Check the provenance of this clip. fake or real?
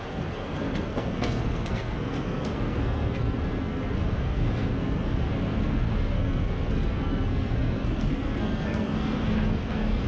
fake